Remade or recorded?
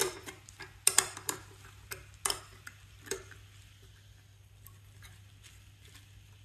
recorded